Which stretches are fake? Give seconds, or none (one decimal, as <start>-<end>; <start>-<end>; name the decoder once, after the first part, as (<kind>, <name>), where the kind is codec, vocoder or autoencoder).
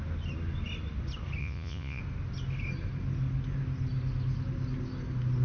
1.4-2.0 (vocoder, Vocos)